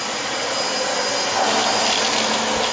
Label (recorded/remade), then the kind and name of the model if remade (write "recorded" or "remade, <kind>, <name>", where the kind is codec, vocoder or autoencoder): recorded